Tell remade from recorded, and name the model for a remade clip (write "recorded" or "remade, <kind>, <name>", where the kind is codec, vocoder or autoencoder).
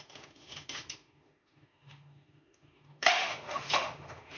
remade, autoencoder, DAC-VAE